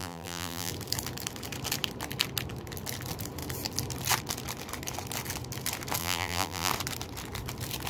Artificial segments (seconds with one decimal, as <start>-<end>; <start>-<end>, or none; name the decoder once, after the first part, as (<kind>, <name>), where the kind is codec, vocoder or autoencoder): 0.0-0.7 (vocoder, BigVGAN v2); 6.0-6.7

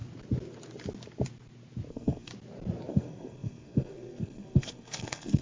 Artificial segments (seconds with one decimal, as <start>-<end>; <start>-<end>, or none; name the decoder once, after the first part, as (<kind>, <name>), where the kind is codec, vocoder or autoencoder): 1.9-2.3 (codec, SNAC); 2.9-5.4